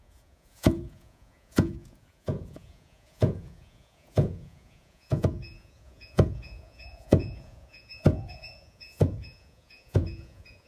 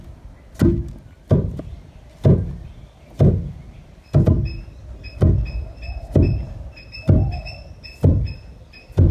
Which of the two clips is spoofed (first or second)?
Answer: first